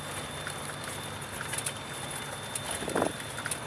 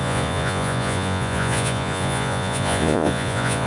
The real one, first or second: first